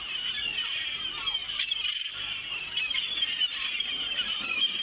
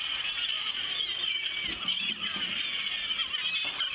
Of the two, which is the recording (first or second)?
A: second